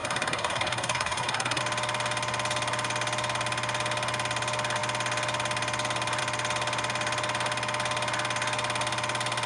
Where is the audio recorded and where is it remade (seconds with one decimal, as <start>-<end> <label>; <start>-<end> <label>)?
0.0-1.6 remade; 1.6-9.5 recorded